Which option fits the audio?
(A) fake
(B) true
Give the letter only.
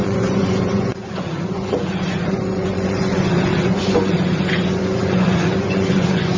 A